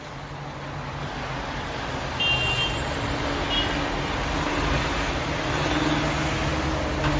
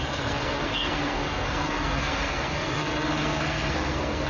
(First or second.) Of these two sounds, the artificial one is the second